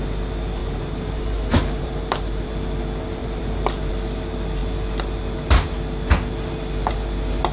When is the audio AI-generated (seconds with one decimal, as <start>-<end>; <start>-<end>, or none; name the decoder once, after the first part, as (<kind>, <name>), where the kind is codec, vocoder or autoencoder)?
0.6-2.5 (vocoder, BigVGAN v2); 3.2-3.9